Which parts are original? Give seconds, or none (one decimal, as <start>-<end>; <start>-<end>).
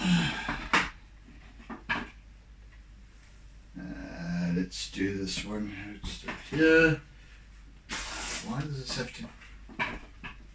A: 0.0-4.0; 5.0-10.5